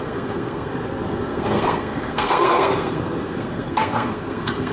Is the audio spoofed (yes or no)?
yes